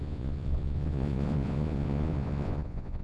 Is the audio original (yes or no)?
no